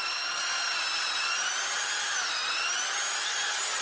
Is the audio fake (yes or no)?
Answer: no